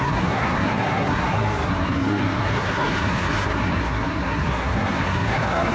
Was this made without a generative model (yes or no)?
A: no